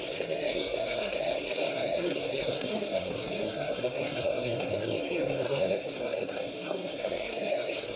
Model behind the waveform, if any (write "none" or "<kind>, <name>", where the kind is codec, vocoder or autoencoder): codec, SNAC